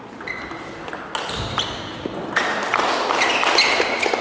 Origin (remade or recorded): recorded